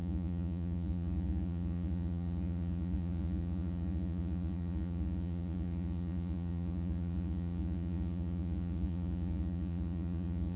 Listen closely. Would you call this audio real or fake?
fake